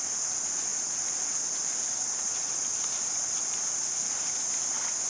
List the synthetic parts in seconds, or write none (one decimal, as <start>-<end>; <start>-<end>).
none